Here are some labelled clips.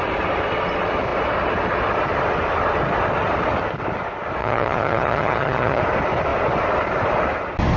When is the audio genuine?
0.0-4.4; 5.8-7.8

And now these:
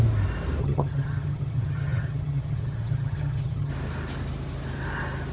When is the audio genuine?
0.0-0.6; 3.7-5.3

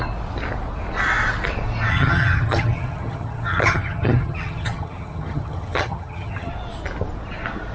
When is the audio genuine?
0.0-1.9; 6.5-7.7

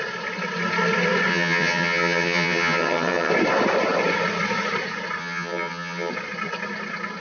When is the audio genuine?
0.0-1.3; 3.3-5.2; 6.1-7.2

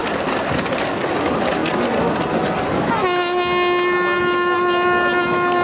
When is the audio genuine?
0.0-5.6